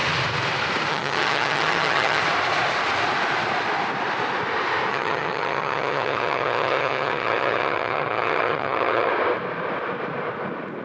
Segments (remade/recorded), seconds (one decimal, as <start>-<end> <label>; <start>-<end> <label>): 0.0-0.9 recorded; 0.9-2.2 remade; 2.2-4.9 recorded; 4.9-9.1 remade; 9.1-10.8 recorded